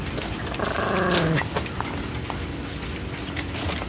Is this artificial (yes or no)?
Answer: no